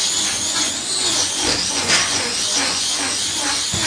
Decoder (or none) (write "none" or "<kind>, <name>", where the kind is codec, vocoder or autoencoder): vocoder, Vocos